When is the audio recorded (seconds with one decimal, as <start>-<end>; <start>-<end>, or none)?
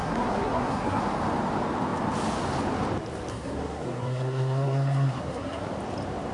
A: 1.0-3.3; 5.7-6.3